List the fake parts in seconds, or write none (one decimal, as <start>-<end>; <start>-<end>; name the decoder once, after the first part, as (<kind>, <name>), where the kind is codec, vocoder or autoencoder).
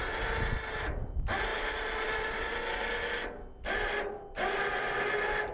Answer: none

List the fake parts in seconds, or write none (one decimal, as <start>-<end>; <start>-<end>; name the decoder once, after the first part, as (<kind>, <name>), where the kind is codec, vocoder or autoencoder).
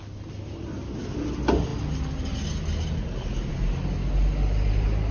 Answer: none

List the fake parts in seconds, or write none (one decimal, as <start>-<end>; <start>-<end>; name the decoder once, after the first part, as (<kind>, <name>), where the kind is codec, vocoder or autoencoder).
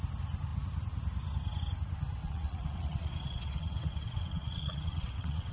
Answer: 2.2-5.5 (vocoder, WaveNeXt)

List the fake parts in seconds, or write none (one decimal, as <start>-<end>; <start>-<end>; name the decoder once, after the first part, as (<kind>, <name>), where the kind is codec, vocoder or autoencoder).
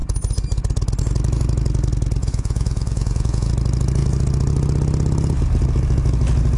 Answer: 2.2-3.5 (vocoder, Vocos)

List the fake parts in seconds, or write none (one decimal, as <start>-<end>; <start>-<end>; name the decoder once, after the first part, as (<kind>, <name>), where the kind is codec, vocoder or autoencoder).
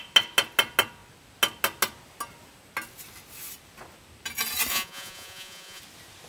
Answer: 4.7-5.8 (vocoder, Vocos)